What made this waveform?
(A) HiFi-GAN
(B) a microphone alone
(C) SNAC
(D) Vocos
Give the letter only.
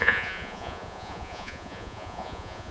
D